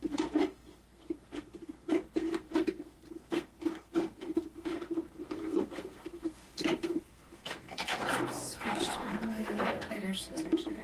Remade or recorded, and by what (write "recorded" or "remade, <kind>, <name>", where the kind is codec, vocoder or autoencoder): remade, codec, SNAC